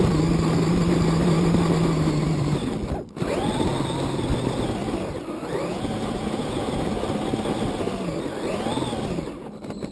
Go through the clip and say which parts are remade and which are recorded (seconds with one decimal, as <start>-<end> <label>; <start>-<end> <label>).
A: 0.0-5.7 recorded; 5.7-7.0 remade; 7.0-9.9 recorded

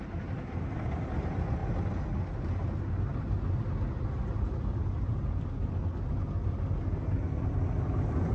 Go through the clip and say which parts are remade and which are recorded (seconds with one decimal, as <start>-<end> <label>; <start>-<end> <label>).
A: 0.0-8.3 recorded

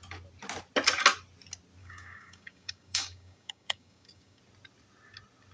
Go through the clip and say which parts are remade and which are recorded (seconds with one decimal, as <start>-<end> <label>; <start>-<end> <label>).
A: 0.0-1.8 recorded; 1.8-4.4 remade; 4.4-5.5 recorded

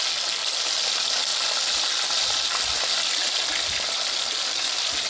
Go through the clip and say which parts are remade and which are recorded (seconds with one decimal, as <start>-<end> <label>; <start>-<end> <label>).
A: 0.0-5.1 recorded

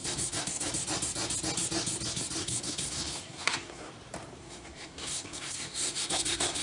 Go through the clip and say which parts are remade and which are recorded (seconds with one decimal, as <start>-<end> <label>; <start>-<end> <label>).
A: 0.0-0.7 remade; 0.7-2.4 recorded; 2.4-3.9 remade; 3.9-4.4 recorded; 4.4-6.6 remade

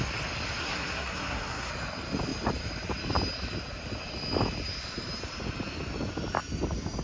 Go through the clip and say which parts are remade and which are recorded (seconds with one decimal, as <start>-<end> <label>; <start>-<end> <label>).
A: 0.0-0.6 recorded; 0.6-1.7 remade; 1.7-7.0 recorded